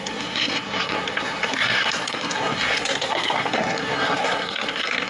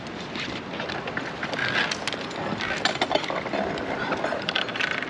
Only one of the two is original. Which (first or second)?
second